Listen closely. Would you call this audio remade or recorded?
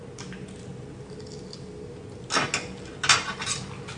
recorded